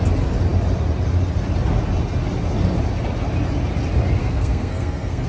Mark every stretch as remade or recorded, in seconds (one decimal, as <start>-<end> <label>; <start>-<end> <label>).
0.0-4.2 recorded; 4.2-5.3 remade